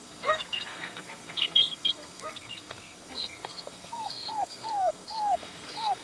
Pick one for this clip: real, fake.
fake